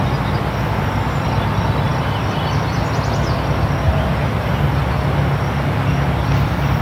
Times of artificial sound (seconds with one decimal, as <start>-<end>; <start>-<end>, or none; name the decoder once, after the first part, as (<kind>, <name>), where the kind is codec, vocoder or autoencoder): none